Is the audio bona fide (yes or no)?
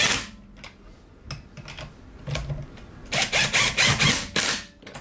yes